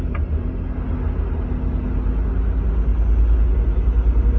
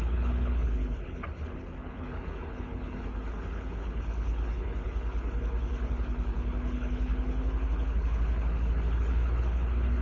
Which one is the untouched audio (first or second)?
first